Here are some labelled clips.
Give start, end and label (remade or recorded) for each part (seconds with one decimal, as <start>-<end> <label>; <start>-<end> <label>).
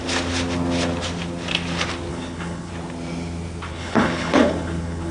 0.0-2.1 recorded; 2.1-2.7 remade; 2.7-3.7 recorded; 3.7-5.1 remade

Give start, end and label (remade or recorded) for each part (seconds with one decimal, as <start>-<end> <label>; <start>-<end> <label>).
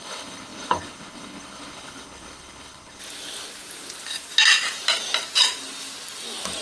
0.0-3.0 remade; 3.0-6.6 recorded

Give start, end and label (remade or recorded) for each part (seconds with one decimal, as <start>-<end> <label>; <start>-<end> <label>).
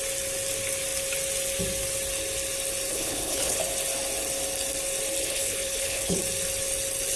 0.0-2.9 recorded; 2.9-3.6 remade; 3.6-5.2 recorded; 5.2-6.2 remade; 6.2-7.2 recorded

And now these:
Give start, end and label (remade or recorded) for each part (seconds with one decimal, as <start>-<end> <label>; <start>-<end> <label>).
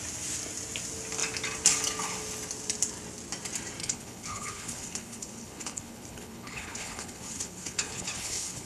0.0-3.8 recorded; 3.8-8.7 remade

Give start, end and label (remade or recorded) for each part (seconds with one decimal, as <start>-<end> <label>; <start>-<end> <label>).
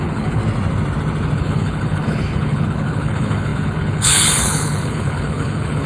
0.0-0.4 remade; 0.4-1.4 recorded; 1.4-5.9 remade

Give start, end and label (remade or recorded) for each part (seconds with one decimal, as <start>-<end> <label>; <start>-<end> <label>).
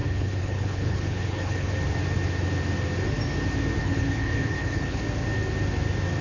0.0-1.7 remade; 1.7-3.8 recorded; 3.8-5.0 remade; 5.0-6.2 recorded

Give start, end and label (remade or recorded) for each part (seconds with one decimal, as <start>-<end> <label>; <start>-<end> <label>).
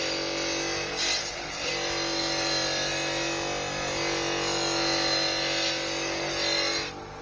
0.0-1.2 recorded; 1.2-1.7 remade; 1.7-7.2 recorded